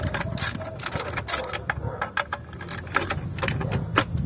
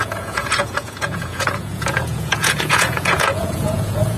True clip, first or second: first